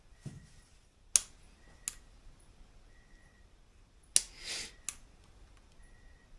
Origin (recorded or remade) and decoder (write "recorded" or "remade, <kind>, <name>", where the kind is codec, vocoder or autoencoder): recorded